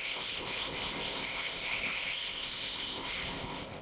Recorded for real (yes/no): no